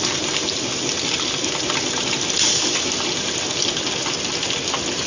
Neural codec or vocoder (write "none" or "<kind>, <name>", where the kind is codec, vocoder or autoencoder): none